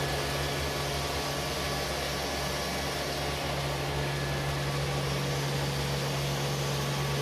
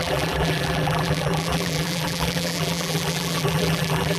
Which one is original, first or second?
first